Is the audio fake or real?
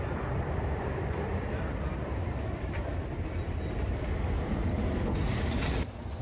real